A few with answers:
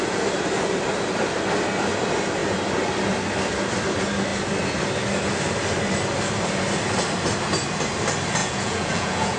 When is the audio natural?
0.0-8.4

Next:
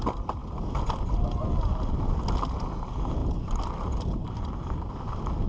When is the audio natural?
0.0-5.5

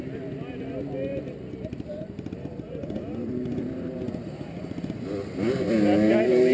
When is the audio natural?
0.0-1.1; 5.0-6.5

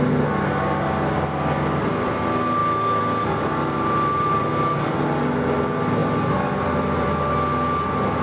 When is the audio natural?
0.0-2.6; 4.5-6.0; 7.1-8.2